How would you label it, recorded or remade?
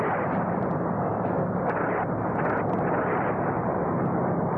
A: recorded